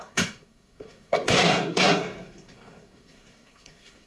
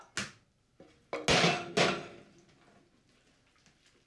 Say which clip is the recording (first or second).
second